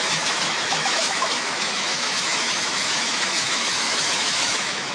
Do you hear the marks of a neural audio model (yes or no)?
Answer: yes